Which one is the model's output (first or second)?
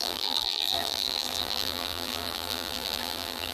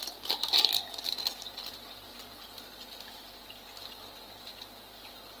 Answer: first